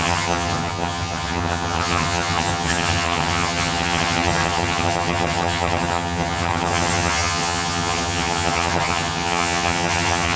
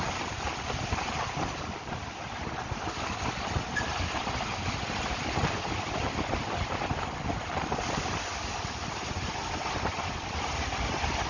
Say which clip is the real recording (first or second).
second